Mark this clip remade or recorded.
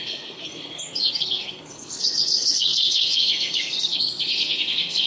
remade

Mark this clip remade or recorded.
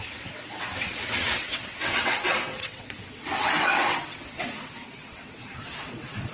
remade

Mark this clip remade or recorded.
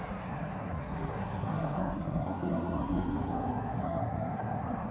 remade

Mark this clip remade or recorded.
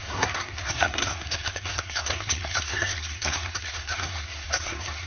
remade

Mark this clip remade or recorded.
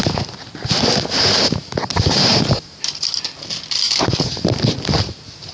recorded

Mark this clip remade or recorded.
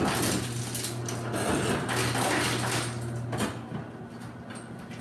recorded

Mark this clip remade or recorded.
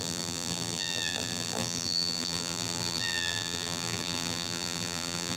remade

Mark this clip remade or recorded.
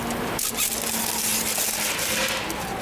recorded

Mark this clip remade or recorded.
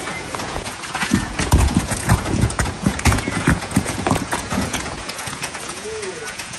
remade